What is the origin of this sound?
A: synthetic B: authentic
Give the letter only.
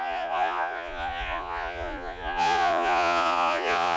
A